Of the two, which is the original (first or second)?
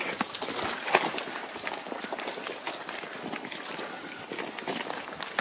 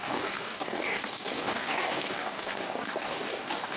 first